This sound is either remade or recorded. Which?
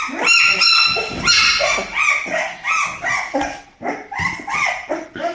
recorded